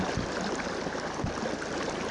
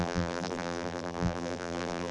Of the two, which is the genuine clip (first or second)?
first